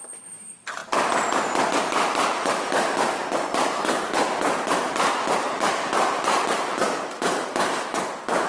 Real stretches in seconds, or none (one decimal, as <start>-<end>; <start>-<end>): 0.8-1.7